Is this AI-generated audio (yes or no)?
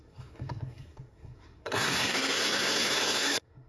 yes